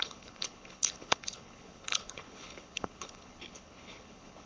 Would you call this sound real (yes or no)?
no